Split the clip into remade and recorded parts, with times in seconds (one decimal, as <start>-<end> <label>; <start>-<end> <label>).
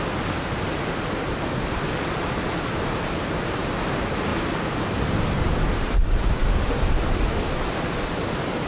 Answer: 0.0-4.3 remade; 4.3-5.8 recorded; 5.8-8.7 remade